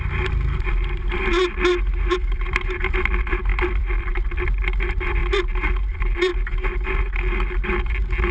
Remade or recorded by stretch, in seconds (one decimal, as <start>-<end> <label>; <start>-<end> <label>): 0.0-1.2 remade; 1.2-1.7 recorded; 1.7-5.2 remade; 5.2-5.8 recorded; 5.8-6.3 remade; 6.3-8.3 recorded